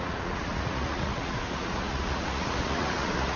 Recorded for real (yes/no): no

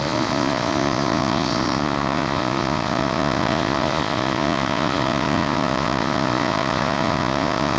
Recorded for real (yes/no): no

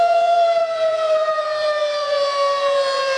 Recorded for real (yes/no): no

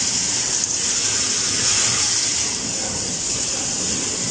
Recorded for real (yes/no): yes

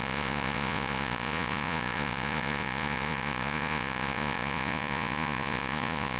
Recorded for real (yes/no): no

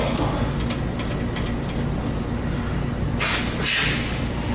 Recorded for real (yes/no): yes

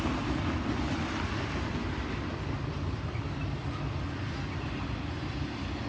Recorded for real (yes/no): yes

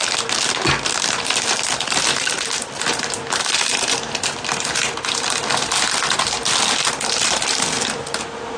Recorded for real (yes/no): yes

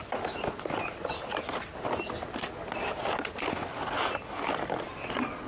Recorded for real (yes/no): yes